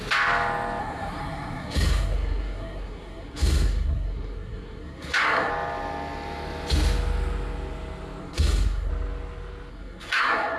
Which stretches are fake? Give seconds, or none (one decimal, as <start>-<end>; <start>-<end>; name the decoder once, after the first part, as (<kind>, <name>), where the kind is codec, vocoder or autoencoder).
0.8-5.5 (codec, SNAC); 8.2-8.9; 9.7-10.6